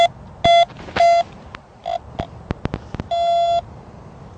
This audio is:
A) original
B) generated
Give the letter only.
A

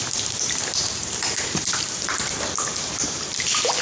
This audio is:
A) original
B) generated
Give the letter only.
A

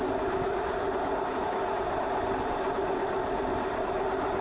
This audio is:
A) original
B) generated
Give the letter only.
A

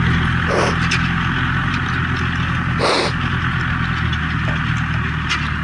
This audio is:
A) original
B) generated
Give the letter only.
A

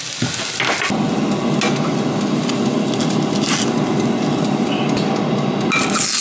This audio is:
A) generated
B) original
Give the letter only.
B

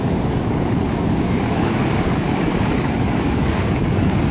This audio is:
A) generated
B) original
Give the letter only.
A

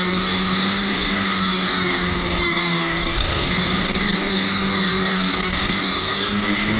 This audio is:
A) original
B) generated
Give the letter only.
B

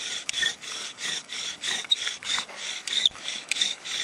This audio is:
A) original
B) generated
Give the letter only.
B